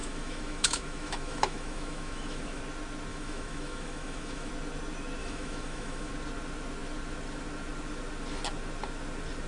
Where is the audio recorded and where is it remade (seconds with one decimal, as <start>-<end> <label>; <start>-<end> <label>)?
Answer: 0.0-2.6 remade; 2.6-3.1 recorded; 3.1-4.5 remade; 4.5-5.2 recorded; 5.2-6.1 remade; 6.1-9.5 recorded